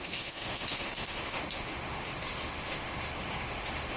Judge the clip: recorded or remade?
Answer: remade